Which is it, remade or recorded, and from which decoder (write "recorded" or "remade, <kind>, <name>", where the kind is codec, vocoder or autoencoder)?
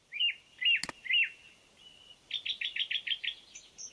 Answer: recorded